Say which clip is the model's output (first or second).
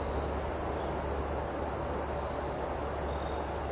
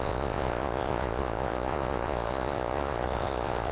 second